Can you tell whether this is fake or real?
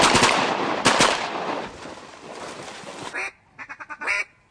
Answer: real